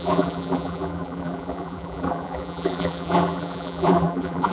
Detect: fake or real fake